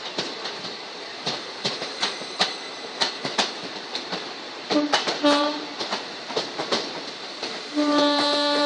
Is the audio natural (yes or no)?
no